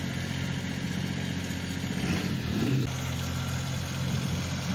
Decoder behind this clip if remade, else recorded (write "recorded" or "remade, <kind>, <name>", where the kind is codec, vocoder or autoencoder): recorded